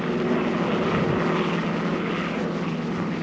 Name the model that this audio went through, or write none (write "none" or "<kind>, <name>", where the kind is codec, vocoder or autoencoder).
none